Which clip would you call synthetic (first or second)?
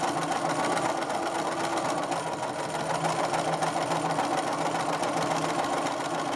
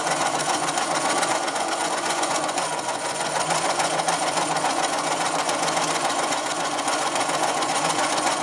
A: second